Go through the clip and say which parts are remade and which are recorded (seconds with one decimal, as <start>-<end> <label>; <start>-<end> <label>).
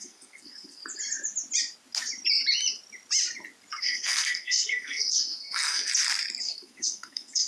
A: 0.0-0.8 remade; 0.8-3.8 recorded; 3.8-5.9 remade; 5.9-6.4 recorded; 6.4-7.5 remade